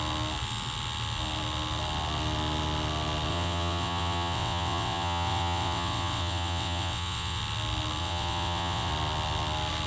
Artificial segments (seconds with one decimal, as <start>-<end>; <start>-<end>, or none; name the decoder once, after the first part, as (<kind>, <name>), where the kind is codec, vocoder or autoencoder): 3.3-7.4 (vocoder, WaveNeXt); 8.0-8.9